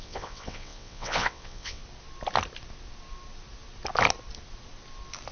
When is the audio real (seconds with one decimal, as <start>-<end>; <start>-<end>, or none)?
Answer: 1.8-5.3